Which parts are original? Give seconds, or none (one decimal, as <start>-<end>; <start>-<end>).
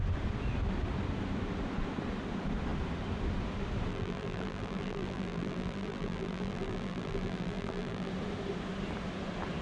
0.0-3.9; 8.1-9.6